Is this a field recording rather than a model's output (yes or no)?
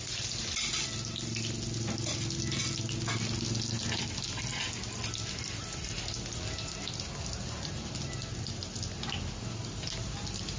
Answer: yes